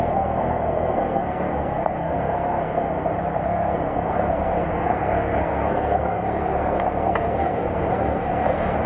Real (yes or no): no